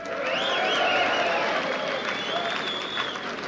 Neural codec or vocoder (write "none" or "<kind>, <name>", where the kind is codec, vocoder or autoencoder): none